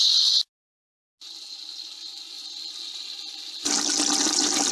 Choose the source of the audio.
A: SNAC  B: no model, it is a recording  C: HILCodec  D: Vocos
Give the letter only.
B